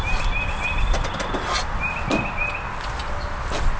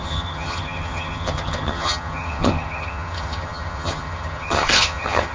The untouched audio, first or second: first